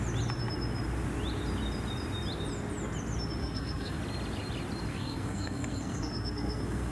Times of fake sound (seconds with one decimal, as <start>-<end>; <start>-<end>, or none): 3.4-4.0; 4.9-6.9